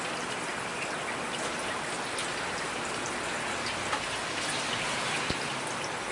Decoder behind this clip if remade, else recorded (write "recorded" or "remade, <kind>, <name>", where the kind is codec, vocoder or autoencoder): recorded